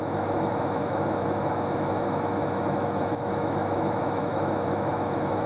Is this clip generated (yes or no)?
yes